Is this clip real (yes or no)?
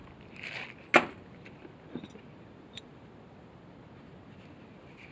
yes